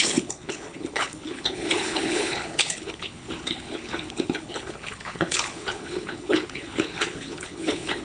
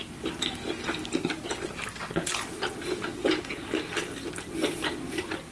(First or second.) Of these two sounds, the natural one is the second